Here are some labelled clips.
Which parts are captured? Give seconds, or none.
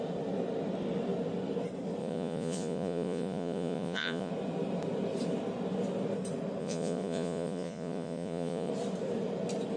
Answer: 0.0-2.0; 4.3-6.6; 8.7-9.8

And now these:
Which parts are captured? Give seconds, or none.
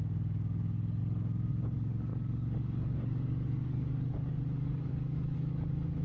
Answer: 1.0-1.5